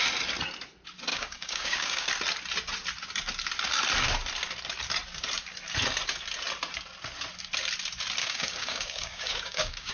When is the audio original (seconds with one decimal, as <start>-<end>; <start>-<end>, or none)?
0.0-1.1; 2.1-8.2